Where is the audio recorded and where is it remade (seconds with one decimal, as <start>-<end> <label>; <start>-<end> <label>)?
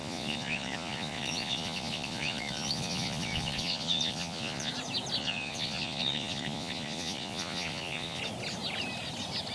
0.0-4.7 remade; 4.7-5.2 recorded; 5.2-8.2 remade; 8.2-9.5 recorded